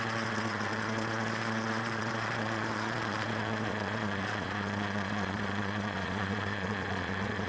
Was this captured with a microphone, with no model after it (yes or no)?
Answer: no